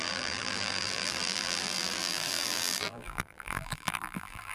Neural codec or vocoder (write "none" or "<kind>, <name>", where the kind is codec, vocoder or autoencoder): vocoder, BigVGAN v2